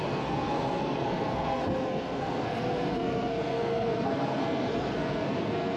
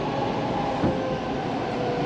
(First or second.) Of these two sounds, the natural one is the second